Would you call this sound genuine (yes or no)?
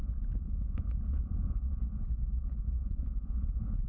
no